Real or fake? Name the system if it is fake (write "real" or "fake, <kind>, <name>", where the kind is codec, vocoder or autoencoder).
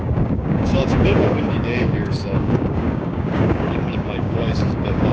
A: fake, codec, DAC